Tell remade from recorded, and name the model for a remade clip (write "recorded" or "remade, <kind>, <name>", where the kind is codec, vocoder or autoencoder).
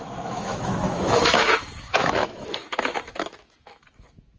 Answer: remade, autoencoder, DAC-VAE